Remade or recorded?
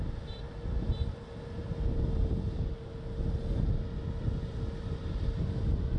recorded